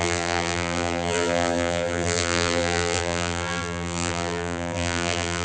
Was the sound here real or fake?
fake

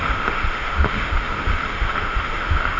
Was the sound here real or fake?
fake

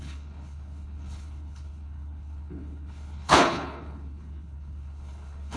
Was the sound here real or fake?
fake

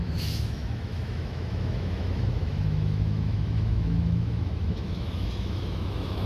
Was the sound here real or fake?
fake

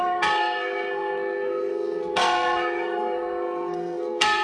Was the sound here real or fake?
fake